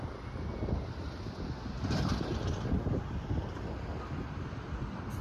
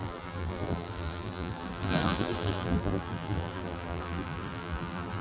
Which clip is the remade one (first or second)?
second